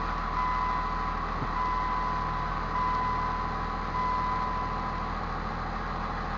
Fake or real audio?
real